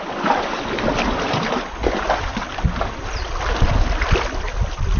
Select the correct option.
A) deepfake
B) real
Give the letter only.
B